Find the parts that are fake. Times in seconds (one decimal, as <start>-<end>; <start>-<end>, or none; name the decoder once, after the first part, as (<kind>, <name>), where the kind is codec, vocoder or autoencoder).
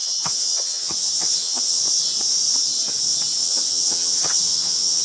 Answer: 0.0-1.8 (vocoder, HiFi-GAN); 3.4-5.0